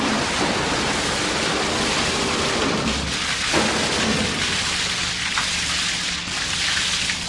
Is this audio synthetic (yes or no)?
no